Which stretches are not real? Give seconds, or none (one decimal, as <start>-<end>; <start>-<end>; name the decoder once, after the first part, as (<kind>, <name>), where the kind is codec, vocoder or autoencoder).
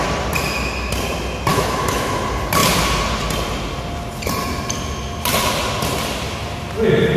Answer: 1.5-2.2 (autoencoder, DAC-VAE)